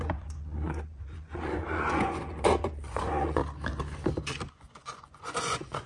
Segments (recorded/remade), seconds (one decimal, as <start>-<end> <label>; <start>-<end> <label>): 0.0-3.4 remade; 3.4-4.5 recorded; 4.5-5.9 remade